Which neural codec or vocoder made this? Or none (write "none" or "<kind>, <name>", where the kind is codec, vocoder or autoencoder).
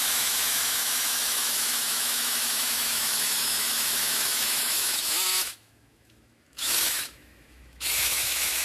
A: autoencoder, DAC-VAE